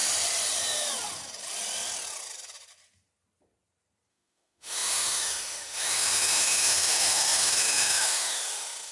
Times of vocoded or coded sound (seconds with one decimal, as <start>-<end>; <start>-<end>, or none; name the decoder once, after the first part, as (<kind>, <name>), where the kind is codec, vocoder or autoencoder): 4.1-8.9 (autoencoder, DAC-VAE)